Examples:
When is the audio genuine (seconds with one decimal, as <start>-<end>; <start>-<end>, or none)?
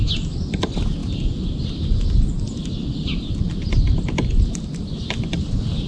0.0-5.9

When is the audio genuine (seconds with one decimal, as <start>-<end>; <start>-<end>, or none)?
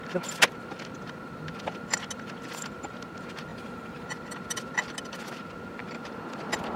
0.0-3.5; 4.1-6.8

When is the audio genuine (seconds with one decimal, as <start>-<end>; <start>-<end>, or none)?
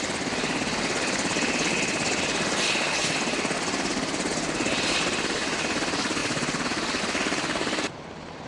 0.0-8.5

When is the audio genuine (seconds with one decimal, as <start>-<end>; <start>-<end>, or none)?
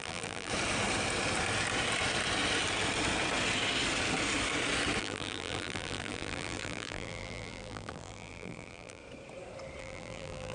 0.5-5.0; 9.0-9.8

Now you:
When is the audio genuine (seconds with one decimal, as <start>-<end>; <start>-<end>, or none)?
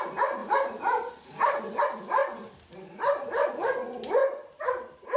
0.0-0.4; 1.8-2.2; 3.5-4.2; 4.8-5.2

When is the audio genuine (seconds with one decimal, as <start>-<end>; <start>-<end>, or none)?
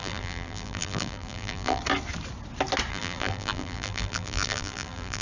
1.8-2.9